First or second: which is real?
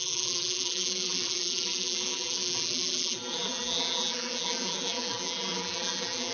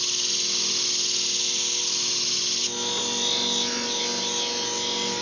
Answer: second